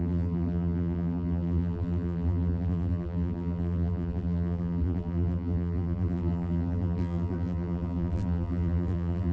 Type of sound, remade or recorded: remade